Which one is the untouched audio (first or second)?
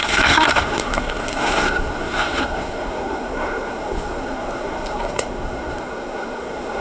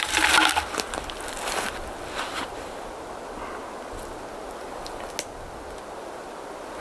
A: second